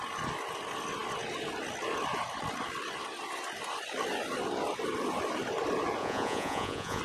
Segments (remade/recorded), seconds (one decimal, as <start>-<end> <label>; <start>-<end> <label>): 0.0-6.0 recorded; 6.0-7.0 remade